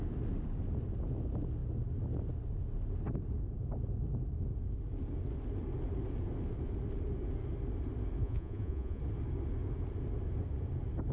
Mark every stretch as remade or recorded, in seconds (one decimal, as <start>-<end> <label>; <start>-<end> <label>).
0.0-8.2 recorded; 8.2-9.0 remade; 9.0-11.1 recorded